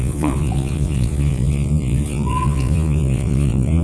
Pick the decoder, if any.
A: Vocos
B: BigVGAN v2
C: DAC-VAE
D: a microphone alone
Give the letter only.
A